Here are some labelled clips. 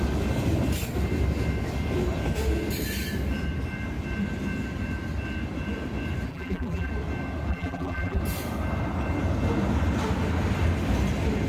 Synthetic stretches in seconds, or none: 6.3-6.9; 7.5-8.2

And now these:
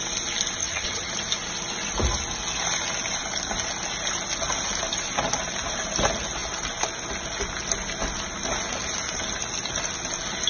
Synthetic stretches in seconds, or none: 0.6-1.1

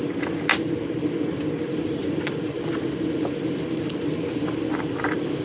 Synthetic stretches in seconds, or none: none